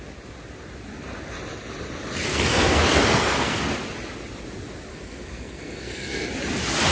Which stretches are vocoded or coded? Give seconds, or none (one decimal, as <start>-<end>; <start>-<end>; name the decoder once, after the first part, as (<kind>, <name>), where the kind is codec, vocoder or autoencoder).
2.3-3.6 (codec, SNAC); 4.9-6.3